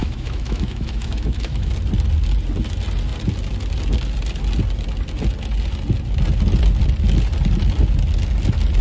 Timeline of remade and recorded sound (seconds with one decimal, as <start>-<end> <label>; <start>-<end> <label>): 0.0-1.7 remade; 1.7-8.8 recorded